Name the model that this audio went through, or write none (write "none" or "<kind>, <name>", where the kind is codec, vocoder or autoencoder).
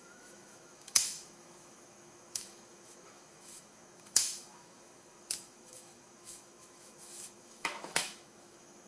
autoencoder, DAC-VAE